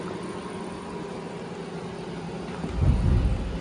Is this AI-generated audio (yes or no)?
no